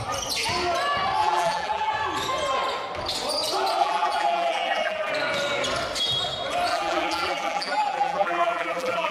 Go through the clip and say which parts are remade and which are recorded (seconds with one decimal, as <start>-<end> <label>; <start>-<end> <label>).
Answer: 0.0-1.2 recorded; 1.2-1.9 remade; 1.9-3.8 recorded; 3.8-5.1 remade; 5.1-6.7 recorded; 6.7-9.1 remade